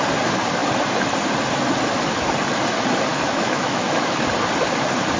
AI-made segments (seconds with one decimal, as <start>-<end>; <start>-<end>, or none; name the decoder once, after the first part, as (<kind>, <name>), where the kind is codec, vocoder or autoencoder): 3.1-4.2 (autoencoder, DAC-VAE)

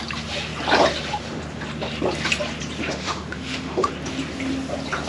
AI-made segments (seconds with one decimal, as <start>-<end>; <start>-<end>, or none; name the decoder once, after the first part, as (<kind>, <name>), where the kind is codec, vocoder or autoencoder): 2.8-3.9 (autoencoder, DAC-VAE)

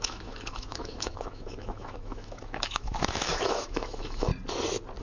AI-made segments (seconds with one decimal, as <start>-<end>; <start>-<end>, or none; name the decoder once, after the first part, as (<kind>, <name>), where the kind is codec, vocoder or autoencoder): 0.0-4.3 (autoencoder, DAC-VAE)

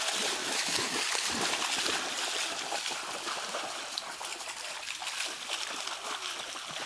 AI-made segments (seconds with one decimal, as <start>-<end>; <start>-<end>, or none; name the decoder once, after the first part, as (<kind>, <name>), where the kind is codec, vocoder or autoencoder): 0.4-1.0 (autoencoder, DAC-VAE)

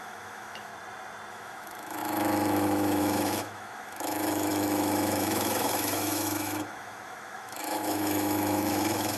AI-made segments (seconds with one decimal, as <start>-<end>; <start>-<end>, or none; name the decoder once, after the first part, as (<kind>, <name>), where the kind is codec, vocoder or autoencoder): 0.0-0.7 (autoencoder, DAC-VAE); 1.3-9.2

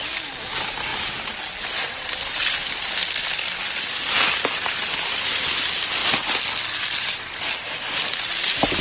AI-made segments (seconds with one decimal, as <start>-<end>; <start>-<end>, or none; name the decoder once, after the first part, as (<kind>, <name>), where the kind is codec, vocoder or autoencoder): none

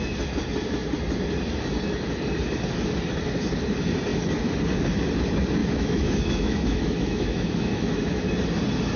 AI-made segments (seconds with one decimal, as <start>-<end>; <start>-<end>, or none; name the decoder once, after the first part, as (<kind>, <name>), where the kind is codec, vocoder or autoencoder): 5.6-8.3 (autoencoder, DAC-VAE)

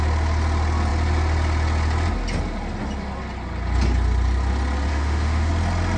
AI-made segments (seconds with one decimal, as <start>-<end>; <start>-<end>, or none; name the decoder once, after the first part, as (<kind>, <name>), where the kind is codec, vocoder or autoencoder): 4.9-5.5 (autoencoder, DAC-VAE)